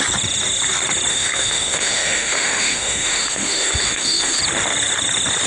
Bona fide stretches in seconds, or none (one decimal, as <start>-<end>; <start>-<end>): 0.0-1.1; 4.4-5.5